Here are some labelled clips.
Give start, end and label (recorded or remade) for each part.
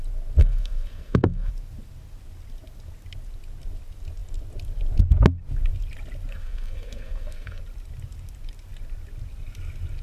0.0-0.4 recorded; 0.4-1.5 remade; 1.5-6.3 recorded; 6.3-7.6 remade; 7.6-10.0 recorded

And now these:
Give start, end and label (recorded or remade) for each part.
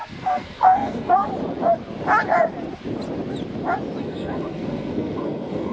0.0-1.3 remade; 1.3-4.0 recorded; 4.0-5.7 remade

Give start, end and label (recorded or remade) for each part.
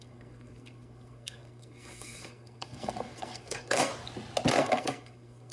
0.0-3.9 remade; 3.9-4.5 recorded; 4.5-5.5 remade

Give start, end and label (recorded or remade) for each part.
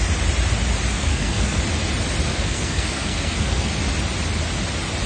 0.0-0.9 recorded; 0.9-1.6 remade; 1.6-2.3 recorded; 2.3-3.7 remade; 3.7-5.1 recorded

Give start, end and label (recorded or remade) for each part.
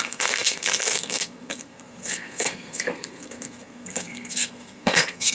0.0-5.3 remade